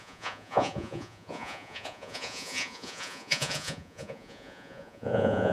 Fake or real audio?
fake